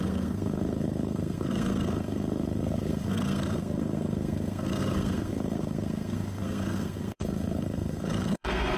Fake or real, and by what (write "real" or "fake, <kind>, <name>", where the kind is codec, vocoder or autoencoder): fake, codec, SNAC